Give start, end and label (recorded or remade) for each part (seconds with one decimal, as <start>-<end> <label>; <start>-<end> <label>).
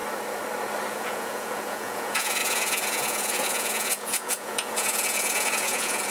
0.0-0.9 recorded; 0.9-6.1 remade